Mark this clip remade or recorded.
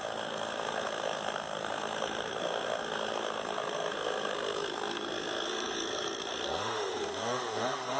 remade